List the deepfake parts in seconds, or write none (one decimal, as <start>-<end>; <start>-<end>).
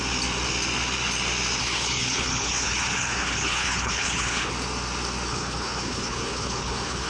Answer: 1.6-4.5; 5.3-7.1